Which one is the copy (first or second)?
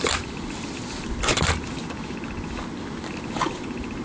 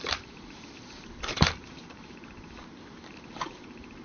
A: second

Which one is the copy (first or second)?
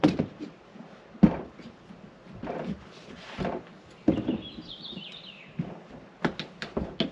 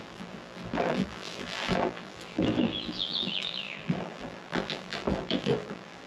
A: second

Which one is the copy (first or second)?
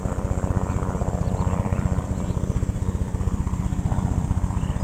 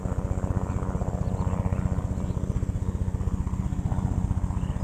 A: first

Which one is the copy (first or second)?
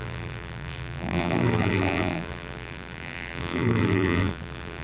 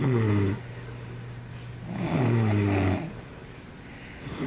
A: first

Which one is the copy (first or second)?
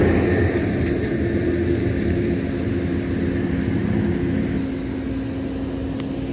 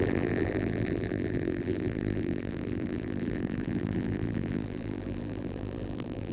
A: second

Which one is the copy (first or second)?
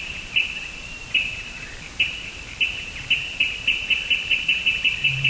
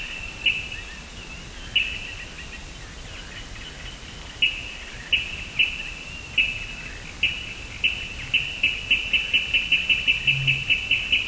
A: first